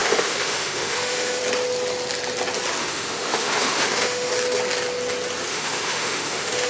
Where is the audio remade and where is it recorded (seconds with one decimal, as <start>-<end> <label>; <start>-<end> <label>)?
0.0-1.4 remade; 1.4-2.8 recorded; 2.8-4.3 remade; 4.3-5.5 recorded; 5.5-6.7 remade